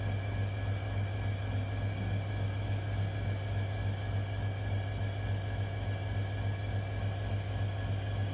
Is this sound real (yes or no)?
yes